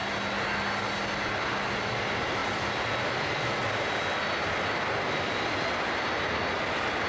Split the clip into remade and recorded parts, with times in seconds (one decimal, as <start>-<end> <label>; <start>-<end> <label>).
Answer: 0.0-7.1 recorded